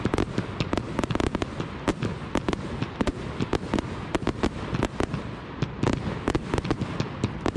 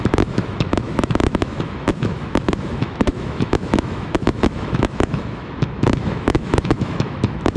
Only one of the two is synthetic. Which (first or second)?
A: second